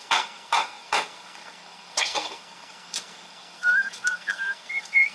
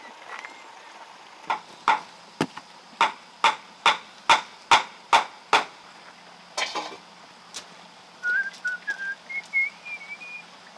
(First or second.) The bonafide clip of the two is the second